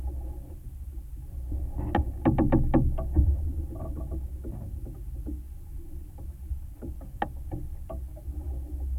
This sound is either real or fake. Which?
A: real